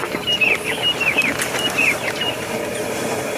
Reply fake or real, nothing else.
fake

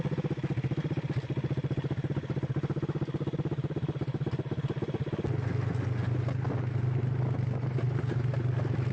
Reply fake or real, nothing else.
real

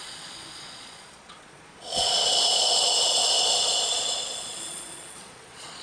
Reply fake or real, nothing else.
fake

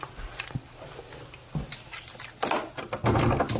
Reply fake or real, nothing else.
real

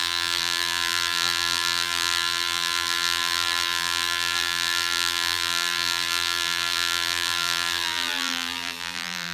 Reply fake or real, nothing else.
fake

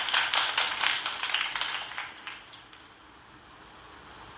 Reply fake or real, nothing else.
real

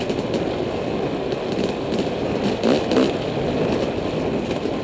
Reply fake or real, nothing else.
real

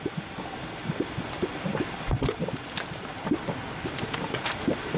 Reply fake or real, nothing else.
real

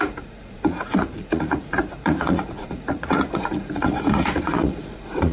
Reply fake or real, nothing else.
fake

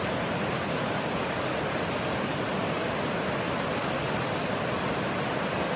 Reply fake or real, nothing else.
real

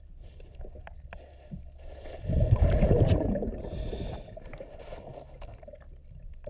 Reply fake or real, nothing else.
real